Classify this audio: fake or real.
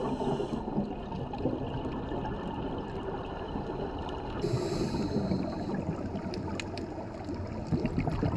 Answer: real